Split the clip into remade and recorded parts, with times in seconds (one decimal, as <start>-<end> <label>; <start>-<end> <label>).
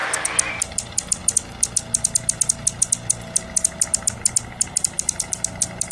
0.0-0.5 recorded; 0.5-1.2 remade; 1.2-4.7 recorded; 4.7-5.9 remade